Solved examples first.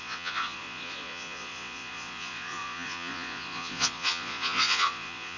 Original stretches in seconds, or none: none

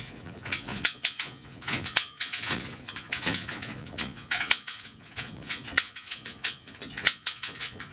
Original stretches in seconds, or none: none

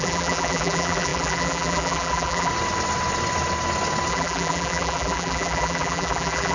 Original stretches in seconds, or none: 2.5-4.1

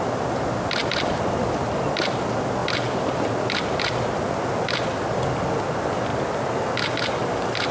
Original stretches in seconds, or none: 0.0-7.7